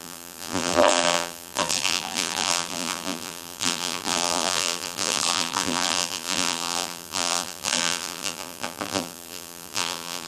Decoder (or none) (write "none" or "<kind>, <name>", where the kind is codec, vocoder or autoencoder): vocoder, BigVGAN v2